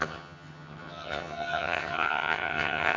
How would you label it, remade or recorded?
remade